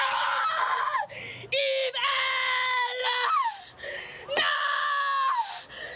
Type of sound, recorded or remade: recorded